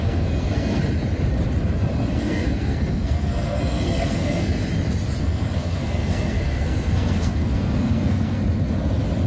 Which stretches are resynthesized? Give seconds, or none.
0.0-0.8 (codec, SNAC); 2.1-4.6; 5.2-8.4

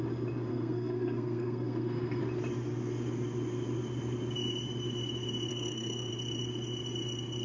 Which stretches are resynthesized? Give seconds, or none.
0.5-2.2 (codec, SNAC); 5.5-6.1

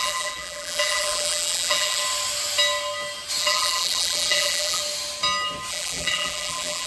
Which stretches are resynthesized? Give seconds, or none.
0.0-2.0 (vocoder, BigVGAN v2); 3.4-4.8; 5.7-6.9

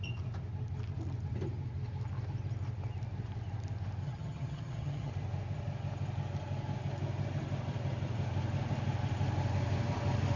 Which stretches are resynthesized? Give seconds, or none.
4.0-5.1 (vocoder, HiFi-GAN)